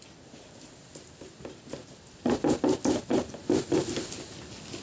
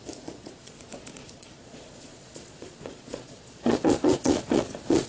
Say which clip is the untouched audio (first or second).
first